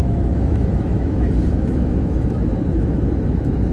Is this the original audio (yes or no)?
no